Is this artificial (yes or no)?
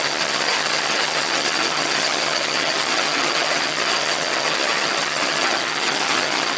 yes